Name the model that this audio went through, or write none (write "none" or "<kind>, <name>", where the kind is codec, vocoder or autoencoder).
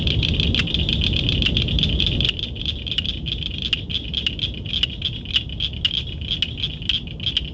none